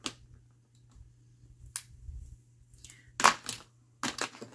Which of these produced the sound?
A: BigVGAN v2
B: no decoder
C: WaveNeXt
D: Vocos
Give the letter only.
B